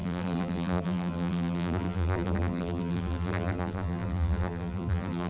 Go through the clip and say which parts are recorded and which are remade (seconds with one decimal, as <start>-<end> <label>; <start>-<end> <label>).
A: 0.0-5.3 remade

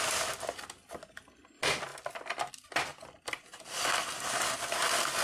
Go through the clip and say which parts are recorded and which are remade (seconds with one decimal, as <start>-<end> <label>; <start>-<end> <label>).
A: 0.0-5.2 recorded

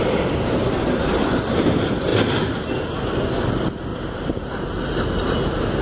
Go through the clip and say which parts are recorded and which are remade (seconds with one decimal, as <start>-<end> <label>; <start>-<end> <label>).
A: 0.0-3.9 recorded; 3.9-5.8 remade

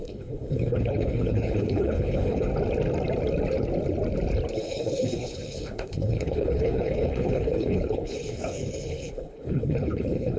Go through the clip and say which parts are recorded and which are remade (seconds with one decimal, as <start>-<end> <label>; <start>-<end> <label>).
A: 0.0-2.5 remade; 2.5-4.6 recorded; 4.6-10.4 remade